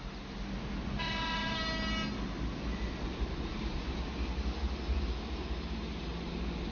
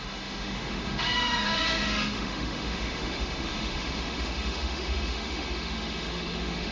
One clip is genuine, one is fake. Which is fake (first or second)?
second